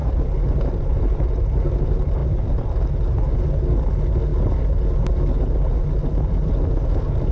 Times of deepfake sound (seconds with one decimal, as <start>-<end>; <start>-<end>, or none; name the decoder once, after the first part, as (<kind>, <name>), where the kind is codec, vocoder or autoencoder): 0.0-1.7 (vocoder, BigVGAN v2)